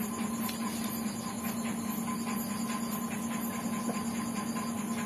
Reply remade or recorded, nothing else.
recorded